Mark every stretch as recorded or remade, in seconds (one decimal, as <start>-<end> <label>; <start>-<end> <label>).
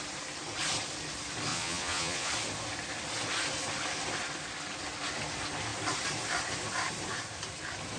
0.0-1.5 recorded; 1.5-2.3 remade; 2.3-8.0 recorded